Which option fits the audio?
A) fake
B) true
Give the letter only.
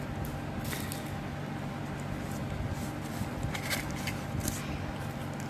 B